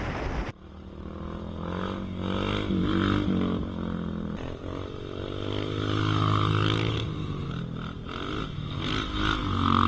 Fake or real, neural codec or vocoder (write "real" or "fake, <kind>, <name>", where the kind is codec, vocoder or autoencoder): real